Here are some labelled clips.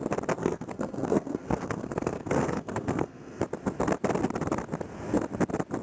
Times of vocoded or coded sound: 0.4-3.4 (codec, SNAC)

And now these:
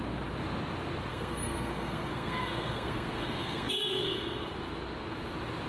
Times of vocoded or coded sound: 1.1-4.5 (codec, SNAC)

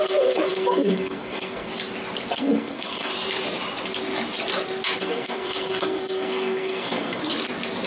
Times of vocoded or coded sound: 0.0-1.7 (codec, SNAC); 2.3-3.1; 5.0-7.2

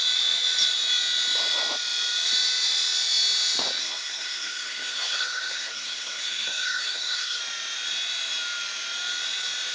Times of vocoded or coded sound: 3.8-7.4 (codec, SNAC)